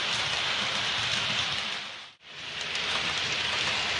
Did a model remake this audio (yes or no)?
yes